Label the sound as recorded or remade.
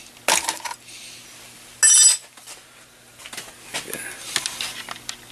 recorded